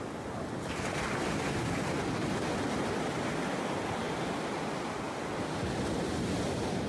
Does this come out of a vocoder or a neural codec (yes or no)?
no